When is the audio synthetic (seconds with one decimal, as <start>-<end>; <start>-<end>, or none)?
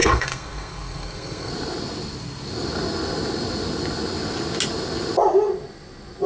0.0-1.5